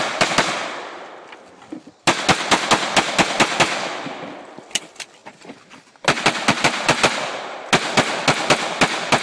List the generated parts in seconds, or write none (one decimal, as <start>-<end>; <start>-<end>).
none